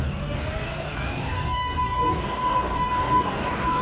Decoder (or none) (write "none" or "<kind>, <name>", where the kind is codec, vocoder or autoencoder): codec, DAC